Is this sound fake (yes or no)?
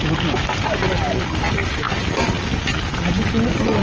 no